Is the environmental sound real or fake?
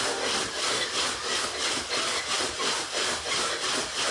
real